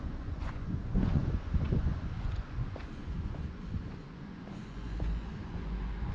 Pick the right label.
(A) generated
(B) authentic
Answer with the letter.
A